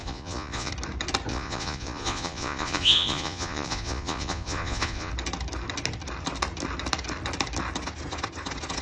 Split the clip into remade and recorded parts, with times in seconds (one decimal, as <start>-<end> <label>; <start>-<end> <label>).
0.0-0.7 remade; 0.7-1.3 recorded; 1.3-5.1 remade; 5.1-8.8 recorded